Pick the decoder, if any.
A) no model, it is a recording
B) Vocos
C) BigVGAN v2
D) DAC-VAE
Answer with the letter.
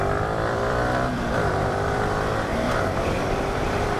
C